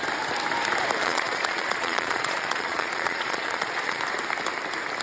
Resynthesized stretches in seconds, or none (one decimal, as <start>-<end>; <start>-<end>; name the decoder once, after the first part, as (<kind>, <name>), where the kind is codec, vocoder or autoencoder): 1.0-4.0 (vocoder, Vocos)